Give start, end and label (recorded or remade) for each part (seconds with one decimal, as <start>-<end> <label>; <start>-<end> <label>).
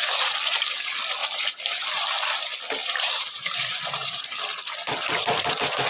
0.0-1.2 recorded; 1.2-1.9 remade; 1.9-2.8 recorded; 2.8-4.3 remade; 4.3-5.9 recorded